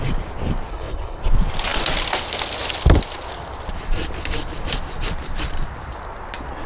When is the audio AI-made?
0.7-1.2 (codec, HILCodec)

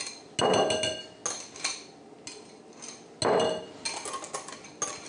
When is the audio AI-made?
none